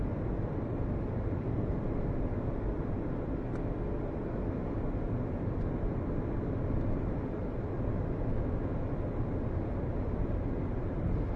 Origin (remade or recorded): recorded